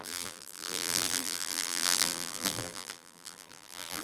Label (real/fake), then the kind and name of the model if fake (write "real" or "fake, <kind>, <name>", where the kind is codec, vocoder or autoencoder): fake, vocoder, BigVGAN v2